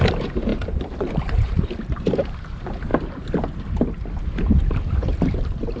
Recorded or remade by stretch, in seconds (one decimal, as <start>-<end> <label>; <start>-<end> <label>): 0.0-2.9 remade; 2.9-4.7 recorded; 4.7-5.8 remade